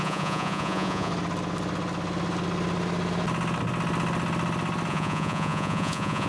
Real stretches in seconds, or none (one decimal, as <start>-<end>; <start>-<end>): 1.1-4.9